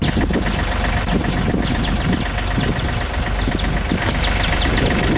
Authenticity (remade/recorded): recorded